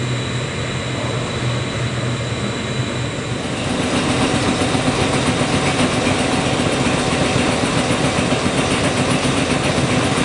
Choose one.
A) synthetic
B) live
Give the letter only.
B